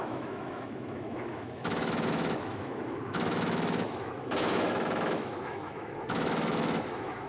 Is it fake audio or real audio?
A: fake